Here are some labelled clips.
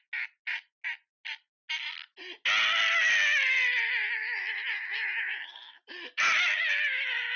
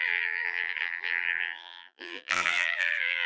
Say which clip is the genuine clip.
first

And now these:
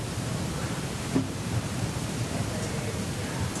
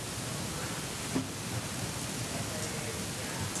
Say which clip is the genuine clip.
second